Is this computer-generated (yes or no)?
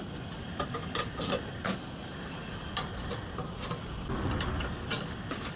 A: no